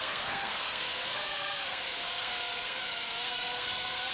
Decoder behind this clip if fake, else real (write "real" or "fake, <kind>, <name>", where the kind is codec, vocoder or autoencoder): fake, codec, SNAC